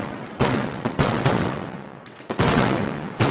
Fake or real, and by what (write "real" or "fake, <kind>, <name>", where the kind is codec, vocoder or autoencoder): fake, vocoder, WaveNeXt